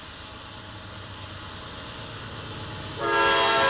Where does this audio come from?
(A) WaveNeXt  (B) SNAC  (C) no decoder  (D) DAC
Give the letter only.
C